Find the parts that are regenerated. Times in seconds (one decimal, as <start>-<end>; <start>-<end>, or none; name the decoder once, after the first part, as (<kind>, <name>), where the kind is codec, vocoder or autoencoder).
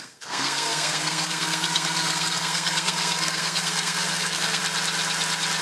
0.0-4.6 (codec, SNAC)